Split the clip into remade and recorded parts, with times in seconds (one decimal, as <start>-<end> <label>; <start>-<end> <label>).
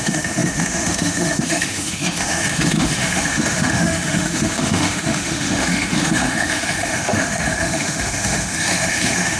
0.0-9.4 remade